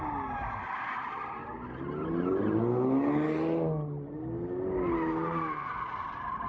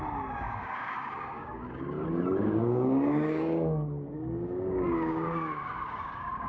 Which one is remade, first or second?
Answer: second